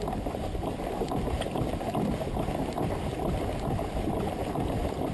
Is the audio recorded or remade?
recorded